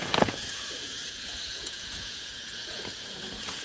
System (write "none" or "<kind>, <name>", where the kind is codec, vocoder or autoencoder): vocoder, Vocos